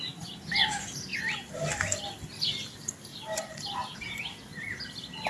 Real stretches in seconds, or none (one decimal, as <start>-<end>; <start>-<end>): 0.0-5.3